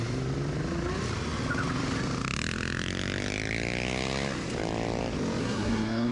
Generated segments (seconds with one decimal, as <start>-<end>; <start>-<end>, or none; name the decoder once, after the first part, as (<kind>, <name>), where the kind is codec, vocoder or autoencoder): 5.4-6.1 (codec, SNAC)